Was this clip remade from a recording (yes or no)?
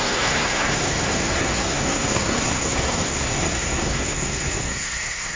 yes